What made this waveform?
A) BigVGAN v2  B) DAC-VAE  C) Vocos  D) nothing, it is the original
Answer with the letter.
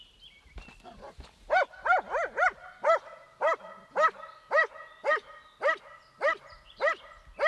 D